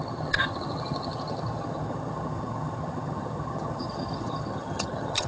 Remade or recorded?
remade